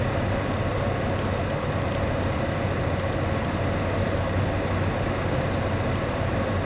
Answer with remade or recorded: recorded